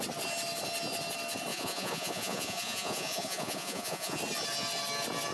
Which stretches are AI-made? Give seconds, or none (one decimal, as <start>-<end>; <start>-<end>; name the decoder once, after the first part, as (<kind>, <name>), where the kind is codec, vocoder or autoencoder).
1.5-4.2 (vocoder, Vocos)